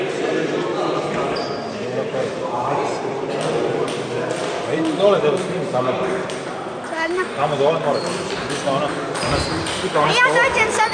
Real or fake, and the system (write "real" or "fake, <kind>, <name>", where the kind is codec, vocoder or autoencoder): real